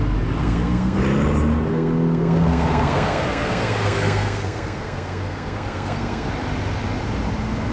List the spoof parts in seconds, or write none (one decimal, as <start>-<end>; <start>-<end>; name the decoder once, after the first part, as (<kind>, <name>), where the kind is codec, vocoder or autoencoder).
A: 0.4-1.0 (codec, SNAC); 1.7-6.3